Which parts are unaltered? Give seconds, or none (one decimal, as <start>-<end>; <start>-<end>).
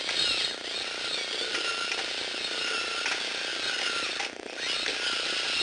0.0-5.6